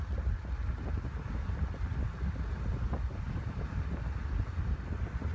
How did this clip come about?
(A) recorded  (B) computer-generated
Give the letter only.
A